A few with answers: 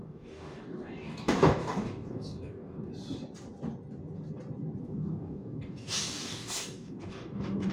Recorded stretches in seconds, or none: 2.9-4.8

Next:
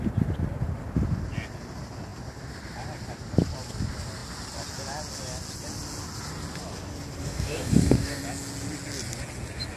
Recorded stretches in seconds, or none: 0.0-7.2; 8.2-9.8

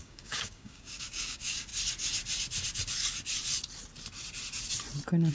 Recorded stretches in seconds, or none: 1.7-5.3